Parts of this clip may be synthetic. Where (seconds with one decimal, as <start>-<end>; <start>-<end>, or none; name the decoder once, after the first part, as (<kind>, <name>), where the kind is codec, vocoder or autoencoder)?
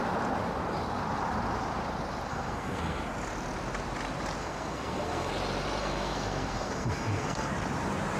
2.3-3.0 (codec, SNAC); 4.4-5.3; 5.8-7.5